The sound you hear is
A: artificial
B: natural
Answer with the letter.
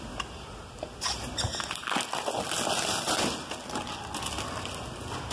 B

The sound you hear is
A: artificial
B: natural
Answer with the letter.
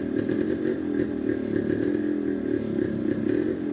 B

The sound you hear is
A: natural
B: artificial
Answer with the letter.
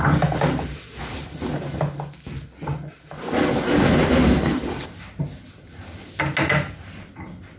A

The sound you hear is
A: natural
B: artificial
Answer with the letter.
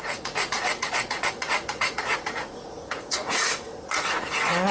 B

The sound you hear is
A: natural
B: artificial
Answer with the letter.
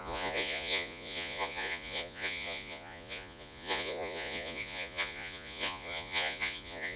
B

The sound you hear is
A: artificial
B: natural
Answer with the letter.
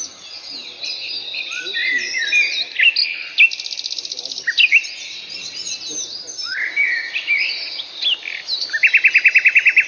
B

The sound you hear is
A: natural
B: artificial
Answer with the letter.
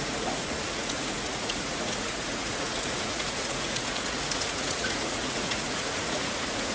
B